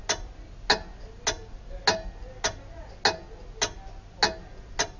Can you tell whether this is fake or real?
real